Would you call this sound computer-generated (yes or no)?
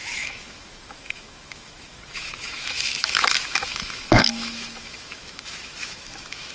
yes